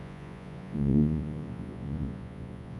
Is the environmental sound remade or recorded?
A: remade